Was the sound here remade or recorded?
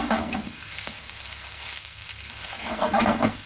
remade